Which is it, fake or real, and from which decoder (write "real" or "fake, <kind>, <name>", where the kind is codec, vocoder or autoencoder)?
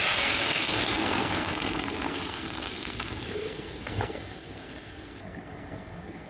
fake, codec, SNAC